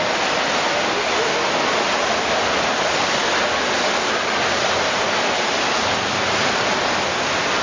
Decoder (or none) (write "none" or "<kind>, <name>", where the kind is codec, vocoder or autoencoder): none